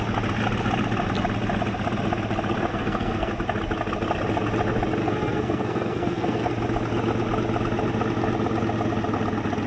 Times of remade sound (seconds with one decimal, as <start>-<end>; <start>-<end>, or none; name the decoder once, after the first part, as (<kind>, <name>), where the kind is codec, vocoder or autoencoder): 2.7-3.3 (codec, SNAC); 5.0-6.5